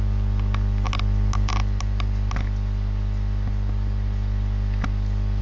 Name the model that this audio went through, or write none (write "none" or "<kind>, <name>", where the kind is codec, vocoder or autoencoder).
none